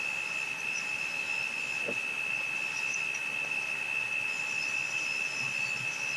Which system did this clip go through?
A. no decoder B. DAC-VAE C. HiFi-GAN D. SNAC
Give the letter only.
A